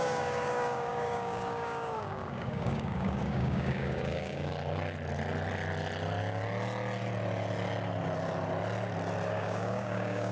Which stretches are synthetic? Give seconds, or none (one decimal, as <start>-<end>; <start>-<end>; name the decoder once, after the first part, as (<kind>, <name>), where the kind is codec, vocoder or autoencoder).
0.0-4.5 (codec, DAC); 9.3-10.3